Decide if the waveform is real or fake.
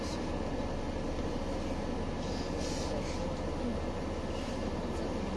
real